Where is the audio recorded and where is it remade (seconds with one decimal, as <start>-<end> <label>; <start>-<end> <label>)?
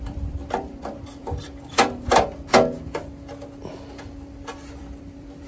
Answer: 0.0-1.7 remade; 1.7-4.7 recorded; 4.7-5.5 remade